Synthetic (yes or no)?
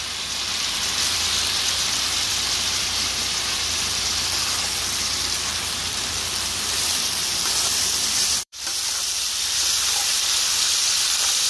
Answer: yes